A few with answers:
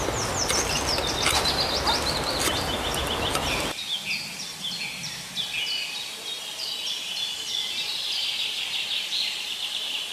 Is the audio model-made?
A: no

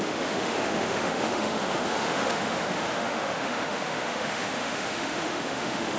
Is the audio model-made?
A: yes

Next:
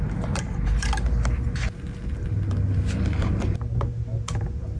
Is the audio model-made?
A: no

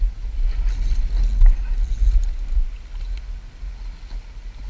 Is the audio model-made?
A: no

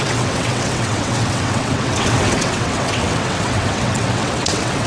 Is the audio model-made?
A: yes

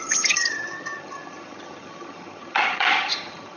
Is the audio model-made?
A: yes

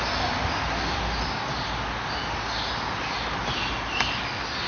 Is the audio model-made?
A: no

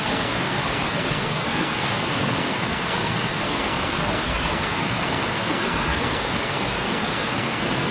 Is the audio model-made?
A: yes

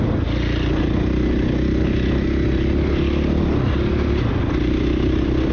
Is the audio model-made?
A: no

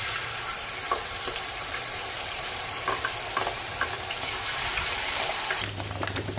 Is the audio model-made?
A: yes